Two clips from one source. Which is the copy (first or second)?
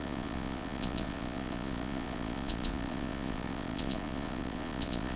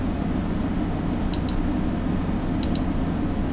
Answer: first